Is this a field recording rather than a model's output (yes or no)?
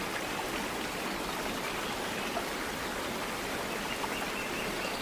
yes